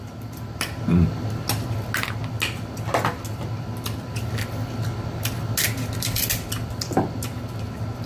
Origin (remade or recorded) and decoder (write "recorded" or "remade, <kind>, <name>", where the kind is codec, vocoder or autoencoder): recorded